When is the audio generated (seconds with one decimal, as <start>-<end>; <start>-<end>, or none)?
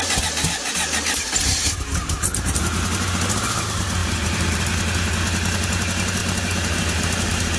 4.0-4.6